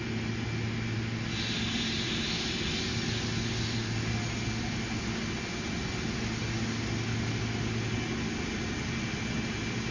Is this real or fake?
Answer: real